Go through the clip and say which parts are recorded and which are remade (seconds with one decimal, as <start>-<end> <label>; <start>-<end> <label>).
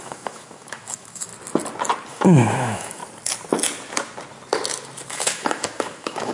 0.0-1.3 remade; 1.3-2.1 recorded; 2.1-3.0 remade; 3.0-5.1 recorded; 5.1-6.3 remade